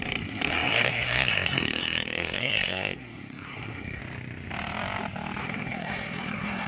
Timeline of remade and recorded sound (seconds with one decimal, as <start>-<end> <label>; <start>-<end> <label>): 0.0-4.0 remade; 4.0-5.4 recorded; 5.4-6.7 remade